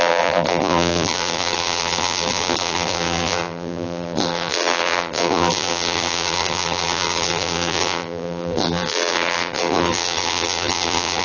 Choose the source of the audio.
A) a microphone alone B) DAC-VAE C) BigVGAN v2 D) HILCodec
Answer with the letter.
C